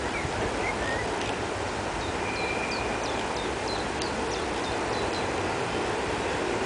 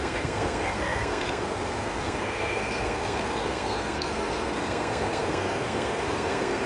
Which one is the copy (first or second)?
second